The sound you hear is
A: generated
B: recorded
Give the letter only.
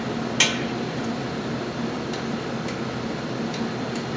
B